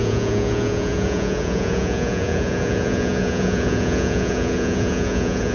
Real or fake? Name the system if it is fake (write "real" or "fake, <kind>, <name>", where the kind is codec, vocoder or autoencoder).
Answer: fake, vocoder, Vocos